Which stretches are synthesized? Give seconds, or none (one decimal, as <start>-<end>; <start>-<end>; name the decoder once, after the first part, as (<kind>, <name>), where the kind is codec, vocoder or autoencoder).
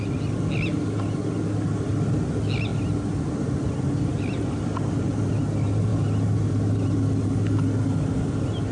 none